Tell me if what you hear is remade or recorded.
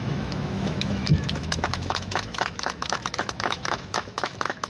remade